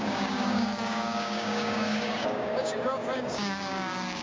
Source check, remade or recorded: remade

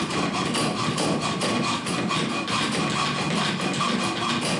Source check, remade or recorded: recorded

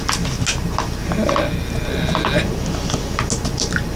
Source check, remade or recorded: recorded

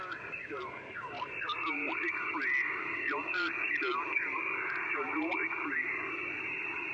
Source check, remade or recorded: recorded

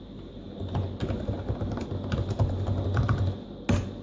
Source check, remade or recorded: recorded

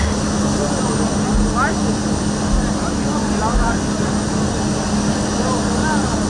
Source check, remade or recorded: recorded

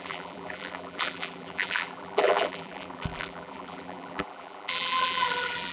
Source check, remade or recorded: remade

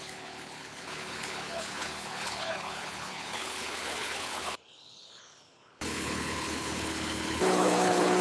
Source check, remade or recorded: remade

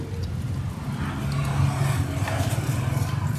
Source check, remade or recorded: recorded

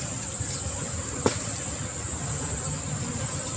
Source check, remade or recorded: recorded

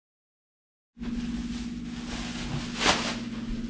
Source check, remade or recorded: recorded